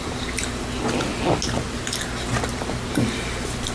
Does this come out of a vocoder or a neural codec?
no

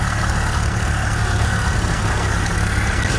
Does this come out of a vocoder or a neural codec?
yes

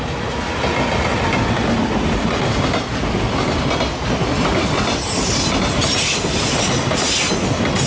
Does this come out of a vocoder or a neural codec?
no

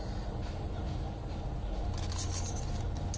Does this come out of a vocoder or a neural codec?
no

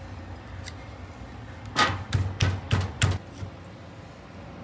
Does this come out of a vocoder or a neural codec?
no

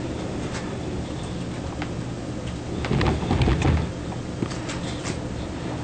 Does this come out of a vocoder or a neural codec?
no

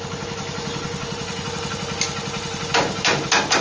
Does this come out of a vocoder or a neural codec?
no